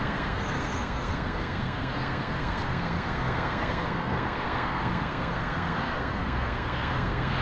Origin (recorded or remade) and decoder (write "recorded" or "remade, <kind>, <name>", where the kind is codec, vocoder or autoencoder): remade, codec, SNAC